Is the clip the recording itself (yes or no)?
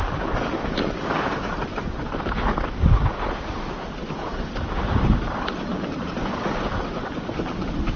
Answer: yes